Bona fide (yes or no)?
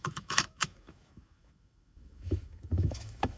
no